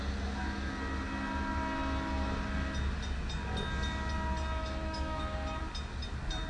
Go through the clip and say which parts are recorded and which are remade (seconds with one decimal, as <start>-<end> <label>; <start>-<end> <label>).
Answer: 0.0-4.6 recorded; 4.6-5.2 remade; 5.2-6.5 recorded